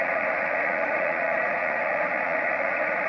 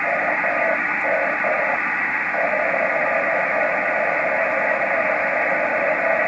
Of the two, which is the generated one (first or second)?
first